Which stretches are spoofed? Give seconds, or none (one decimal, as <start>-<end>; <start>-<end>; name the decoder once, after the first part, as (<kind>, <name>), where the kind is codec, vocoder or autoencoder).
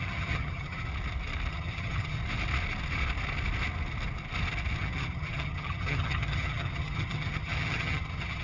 0.0-0.9 (vocoder, HiFi-GAN); 1.5-2.2; 4.8-8.4